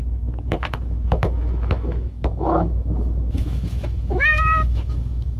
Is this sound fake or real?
fake